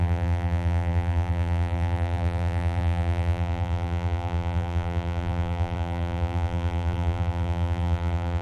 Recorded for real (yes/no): no